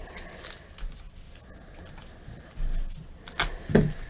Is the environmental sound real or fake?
real